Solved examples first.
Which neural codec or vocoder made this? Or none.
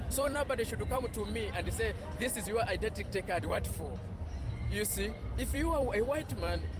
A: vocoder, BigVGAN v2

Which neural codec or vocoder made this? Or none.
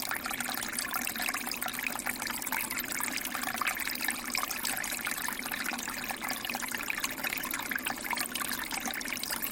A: none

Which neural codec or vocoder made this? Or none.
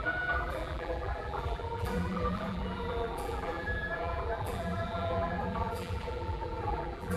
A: vocoder, BigVGAN v2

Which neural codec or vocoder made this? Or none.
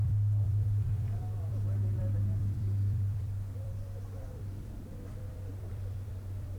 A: vocoder, BigVGAN v2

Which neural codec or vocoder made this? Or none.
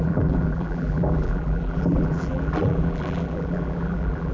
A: vocoder, BigVGAN v2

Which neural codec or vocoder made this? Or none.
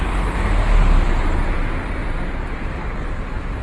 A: none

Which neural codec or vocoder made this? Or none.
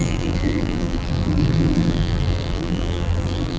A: vocoder, BigVGAN v2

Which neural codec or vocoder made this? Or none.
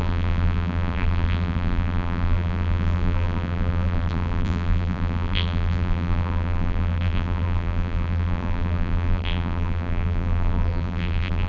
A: vocoder, BigVGAN v2